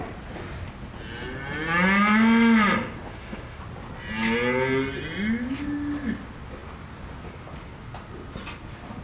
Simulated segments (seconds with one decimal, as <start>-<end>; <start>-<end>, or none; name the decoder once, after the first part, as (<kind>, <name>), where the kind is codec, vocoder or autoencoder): 3.1-3.6 (autoencoder, DAC-VAE)